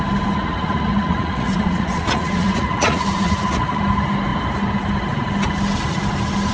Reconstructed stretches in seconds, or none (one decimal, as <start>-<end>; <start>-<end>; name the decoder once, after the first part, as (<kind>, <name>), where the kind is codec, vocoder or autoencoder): 0.4-3.8 (vocoder, Vocos)